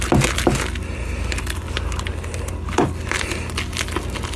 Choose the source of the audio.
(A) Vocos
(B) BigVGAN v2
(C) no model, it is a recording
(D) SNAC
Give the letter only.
C